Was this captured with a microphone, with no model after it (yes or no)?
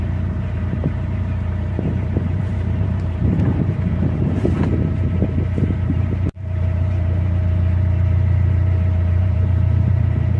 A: no